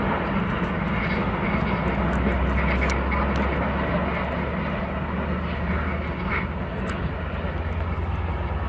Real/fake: real